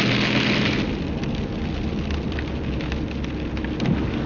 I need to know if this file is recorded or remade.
recorded